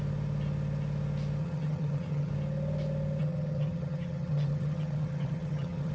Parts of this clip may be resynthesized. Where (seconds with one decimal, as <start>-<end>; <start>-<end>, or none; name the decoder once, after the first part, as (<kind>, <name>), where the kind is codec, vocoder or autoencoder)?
1.4-2.3 (vocoder, HiFi-GAN); 3.2-5.9